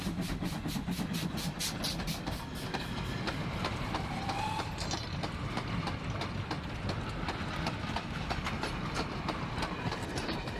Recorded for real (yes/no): yes